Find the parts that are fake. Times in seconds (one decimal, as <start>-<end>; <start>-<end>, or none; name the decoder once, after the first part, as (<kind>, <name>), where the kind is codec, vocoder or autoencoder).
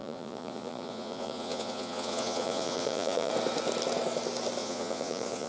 0.0-3.3 (vocoder, Vocos); 4.6-5.5